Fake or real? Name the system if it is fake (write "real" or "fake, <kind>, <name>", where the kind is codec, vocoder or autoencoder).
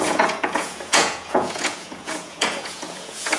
fake, vocoder, Vocos